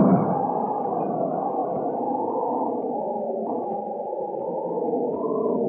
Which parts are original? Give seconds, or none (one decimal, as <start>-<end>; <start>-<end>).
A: 0.0-5.7